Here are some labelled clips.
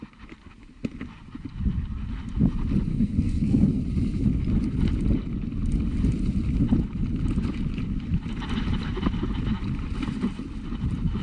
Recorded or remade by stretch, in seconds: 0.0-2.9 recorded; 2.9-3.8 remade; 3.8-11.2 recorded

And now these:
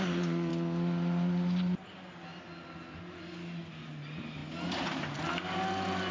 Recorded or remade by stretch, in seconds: 0.0-6.1 recorded

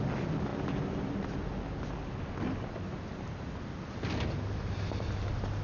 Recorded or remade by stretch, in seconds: 0.0-5.6 recorded

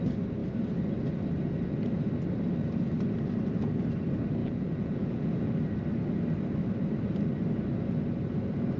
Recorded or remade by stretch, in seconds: 0.0-4.4 recorded; 4.4-5.5 remade; 5.5-8.8 recorded

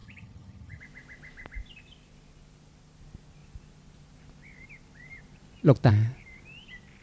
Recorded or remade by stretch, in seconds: 0.0-0.8 remade; 0.8-7.0 recorded